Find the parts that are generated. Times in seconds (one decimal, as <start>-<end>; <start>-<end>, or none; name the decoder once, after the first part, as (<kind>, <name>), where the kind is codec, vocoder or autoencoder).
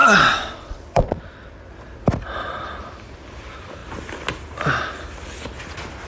0.0-1.7 (vocoder, WaveNeXt)